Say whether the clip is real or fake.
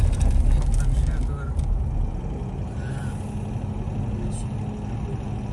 real